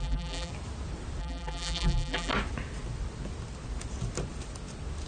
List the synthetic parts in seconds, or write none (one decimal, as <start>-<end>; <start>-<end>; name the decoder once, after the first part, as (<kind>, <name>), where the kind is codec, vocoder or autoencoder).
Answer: 0.0-0.5 (vocoder, BigVGAN v2); 1.2-2.3